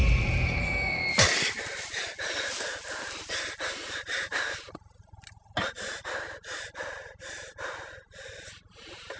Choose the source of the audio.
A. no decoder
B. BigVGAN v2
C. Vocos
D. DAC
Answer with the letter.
A